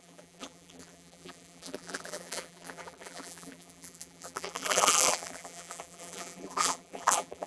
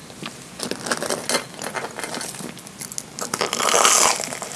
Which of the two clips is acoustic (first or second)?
second